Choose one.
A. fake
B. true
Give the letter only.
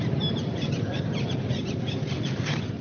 B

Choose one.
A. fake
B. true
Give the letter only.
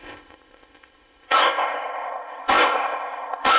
A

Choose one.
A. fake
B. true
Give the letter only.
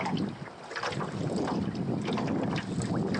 B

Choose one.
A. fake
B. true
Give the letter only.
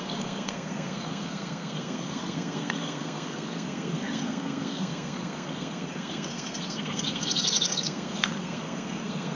A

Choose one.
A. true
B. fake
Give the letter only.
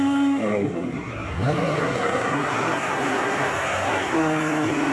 B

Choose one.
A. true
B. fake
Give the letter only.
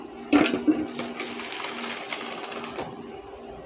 A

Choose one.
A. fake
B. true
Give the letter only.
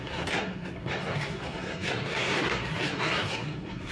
A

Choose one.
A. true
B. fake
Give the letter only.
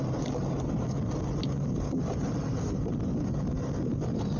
A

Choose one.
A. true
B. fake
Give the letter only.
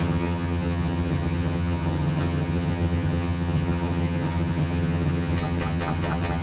B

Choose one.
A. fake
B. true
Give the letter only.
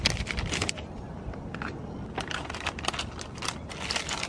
B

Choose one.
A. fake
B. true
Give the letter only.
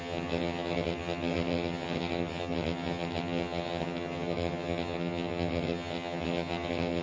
A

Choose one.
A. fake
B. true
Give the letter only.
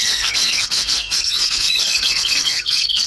A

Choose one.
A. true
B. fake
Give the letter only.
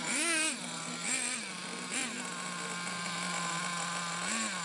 A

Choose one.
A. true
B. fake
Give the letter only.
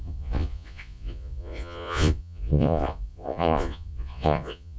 B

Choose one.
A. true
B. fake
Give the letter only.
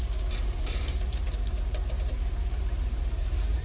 B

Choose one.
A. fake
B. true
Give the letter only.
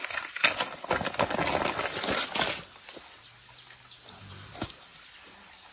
B